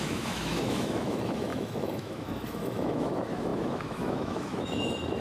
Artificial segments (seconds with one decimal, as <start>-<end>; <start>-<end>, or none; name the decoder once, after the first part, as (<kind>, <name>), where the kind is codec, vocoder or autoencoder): 0.0-5.2 (autoencoder, DAC-VAE)